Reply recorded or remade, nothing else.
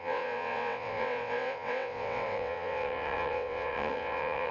remade